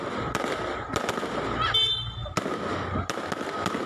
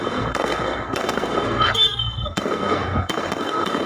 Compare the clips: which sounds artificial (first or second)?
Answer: second